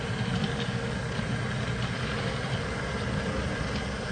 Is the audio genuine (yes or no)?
yes